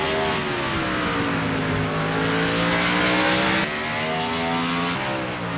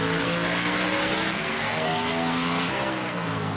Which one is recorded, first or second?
first